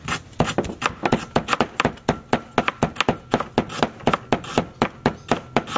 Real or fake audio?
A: real